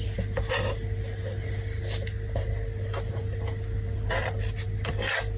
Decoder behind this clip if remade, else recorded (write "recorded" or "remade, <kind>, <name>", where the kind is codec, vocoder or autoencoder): recorded